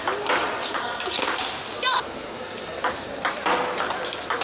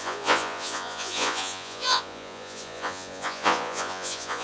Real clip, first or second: first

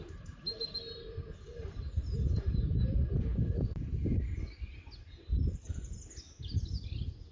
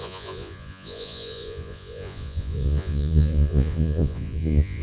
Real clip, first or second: first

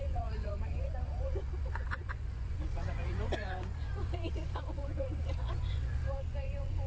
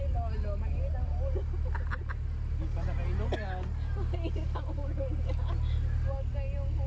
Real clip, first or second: second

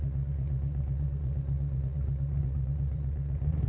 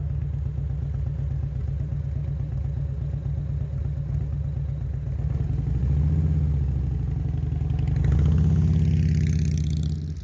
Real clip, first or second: second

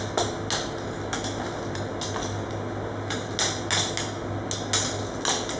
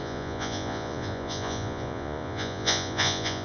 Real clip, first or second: first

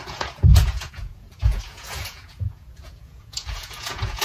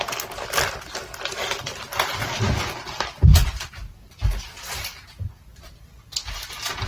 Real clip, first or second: second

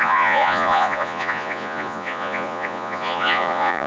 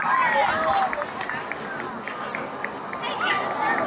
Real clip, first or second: second